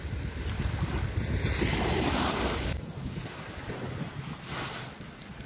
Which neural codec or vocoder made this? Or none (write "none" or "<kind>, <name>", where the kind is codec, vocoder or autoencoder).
none